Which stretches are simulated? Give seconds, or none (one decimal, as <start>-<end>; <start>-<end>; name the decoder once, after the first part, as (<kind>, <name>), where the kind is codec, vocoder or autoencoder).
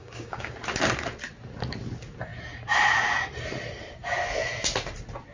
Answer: 0.0-0.5 (codec, DAC)